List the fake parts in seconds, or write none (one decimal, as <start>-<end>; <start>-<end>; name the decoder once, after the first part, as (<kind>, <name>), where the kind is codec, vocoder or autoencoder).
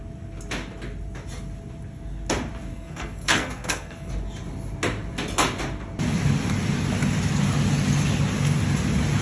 2.7-4.1 (codec, SNAC)